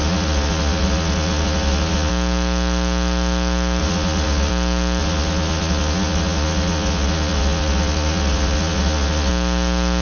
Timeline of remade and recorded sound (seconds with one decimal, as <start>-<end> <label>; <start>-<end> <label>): 0.0-2.1 remade; 2.1-3.8 recorded; 3.8-4.5 remade; 4.5-5.0 recorded; 5.0-9.3 remade; 9.3-10.0 recorded